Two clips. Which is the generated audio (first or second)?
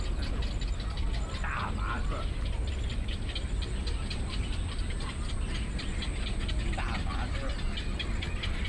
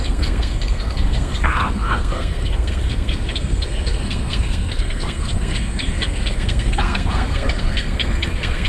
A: second